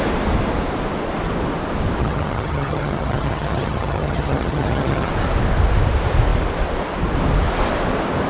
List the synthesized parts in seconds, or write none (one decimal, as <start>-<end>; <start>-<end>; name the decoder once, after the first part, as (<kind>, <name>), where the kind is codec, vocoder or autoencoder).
2.0-5.1 (vocoder, HiFi-GAN)